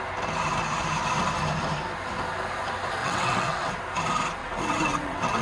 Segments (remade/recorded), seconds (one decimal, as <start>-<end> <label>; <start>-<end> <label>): 0.0-3.0 recorded; 3.0-3.7 remade; 3.7-4.4 recorded; 4.4-5.4 remade